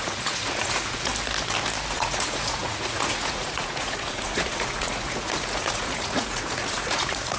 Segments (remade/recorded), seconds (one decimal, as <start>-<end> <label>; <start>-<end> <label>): 0.0-1.1 remade; 1.1-1.9 recorded; 1.9-7.4 remade